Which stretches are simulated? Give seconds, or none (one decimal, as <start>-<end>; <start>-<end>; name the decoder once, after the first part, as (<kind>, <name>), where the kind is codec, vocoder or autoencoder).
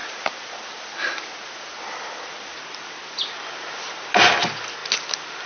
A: 0.0-2.9 (vocoder, BigVGAN v2)